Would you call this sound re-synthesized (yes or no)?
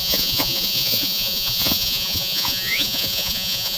yes